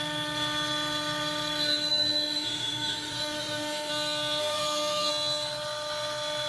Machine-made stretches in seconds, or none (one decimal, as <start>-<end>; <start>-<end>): 1.9-3.9; 4.4-5.1